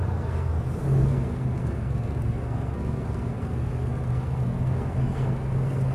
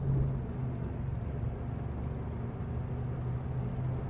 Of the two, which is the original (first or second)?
second